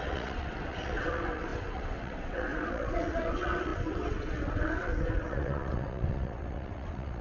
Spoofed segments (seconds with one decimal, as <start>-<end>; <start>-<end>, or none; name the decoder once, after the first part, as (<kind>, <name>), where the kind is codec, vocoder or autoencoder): 0.0-7.2 (vocoder, WaveNeXt)